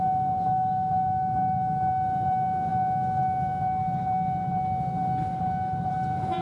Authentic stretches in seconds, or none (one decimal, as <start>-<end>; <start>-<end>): 2.7-5.9